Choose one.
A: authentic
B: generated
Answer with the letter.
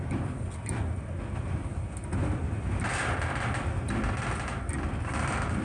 A